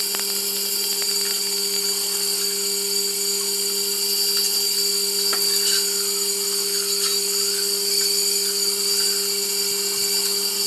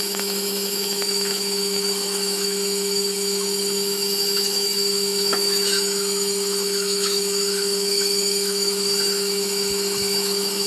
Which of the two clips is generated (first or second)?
second